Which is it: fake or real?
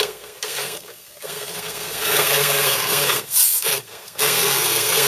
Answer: fake